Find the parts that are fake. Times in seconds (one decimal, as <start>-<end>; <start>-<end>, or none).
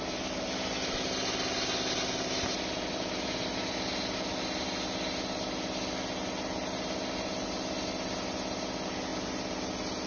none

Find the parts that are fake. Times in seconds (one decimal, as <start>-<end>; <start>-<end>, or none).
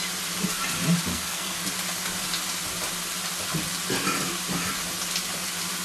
1.1-1.6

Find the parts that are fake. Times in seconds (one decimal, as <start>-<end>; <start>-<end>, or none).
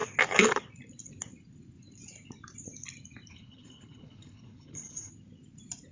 3.3-5.1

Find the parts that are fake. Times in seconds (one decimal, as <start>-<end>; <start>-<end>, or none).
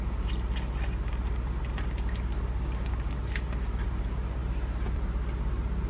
none